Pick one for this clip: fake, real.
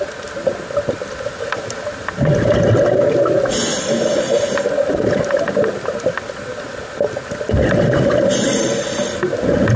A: real